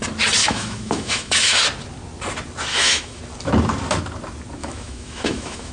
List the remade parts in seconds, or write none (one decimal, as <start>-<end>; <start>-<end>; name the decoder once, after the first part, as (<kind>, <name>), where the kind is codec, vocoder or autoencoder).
0.4-1.6 (autoencoder, DAC-VAE); 2.7-3.2; 4.6-5.7

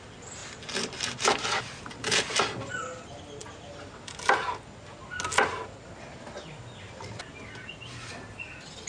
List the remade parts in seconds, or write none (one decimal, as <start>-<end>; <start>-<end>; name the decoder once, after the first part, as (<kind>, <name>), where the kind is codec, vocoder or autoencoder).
none

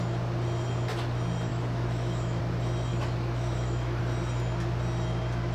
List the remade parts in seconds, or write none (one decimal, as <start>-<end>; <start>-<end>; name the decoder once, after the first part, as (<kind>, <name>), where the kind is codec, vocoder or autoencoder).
1.5-2.4 (autoencoder, DAC-VAE); 2.9-4.0

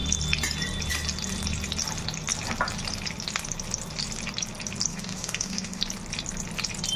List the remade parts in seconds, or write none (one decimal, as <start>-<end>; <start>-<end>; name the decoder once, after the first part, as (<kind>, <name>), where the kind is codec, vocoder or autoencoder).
4.9-5.8 (autoencoder, DAC-VAE)